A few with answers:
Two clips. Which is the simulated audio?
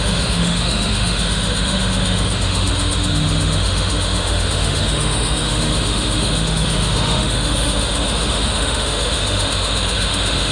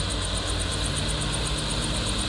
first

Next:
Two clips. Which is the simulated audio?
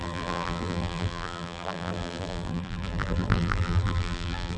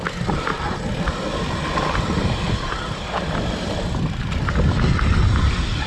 first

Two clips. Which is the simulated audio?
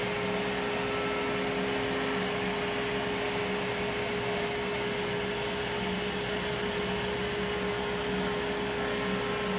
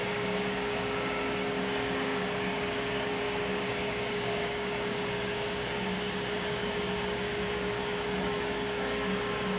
second